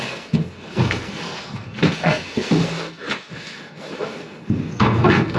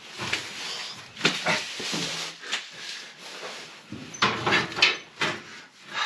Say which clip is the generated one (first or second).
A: first